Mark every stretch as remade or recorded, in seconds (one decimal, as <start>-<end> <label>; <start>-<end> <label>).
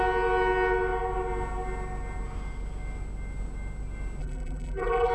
0.0-4.2 recorded; 4.2-5.1 remade